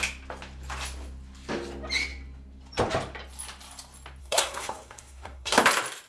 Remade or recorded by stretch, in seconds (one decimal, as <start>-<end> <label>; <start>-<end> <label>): 0.0-4.2 recorded; 4.2-5.6 remade; 5.6-6.1 recorded